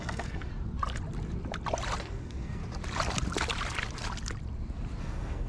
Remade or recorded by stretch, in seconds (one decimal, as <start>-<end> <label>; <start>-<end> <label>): 0.0-0.5 remade; 0.5-2.0 recorded; 2.0-2.6 remade; 2.6-5.0 recorded; 5.0-5.5 remade